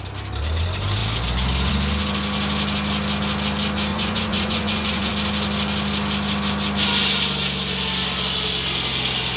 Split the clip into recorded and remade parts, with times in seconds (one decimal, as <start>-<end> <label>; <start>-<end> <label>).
0.0-3.9 recorded; 3.9-5.1 remade; 5.1-9.4 recorded